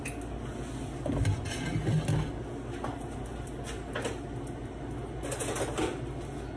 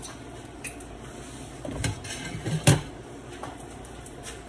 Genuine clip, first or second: first